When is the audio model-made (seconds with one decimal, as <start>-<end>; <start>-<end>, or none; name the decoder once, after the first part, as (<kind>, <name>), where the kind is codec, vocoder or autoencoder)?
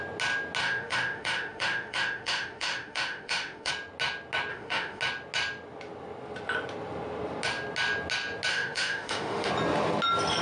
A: 0.6-3.7 (autoencoder, DAC-VAE); 4.5-5.0; 8.5-9.5